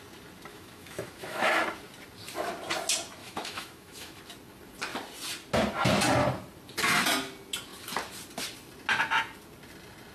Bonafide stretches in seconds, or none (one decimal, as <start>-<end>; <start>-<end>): 0.0-0.5; 1.6-3.2; 4.2-10.1